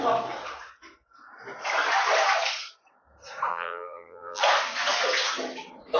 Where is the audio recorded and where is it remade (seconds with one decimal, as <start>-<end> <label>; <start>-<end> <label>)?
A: 0.0-3.5 recorded; 3.5-4.4 remade; 4.4-6.0 recorded